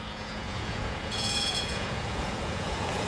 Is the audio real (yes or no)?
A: no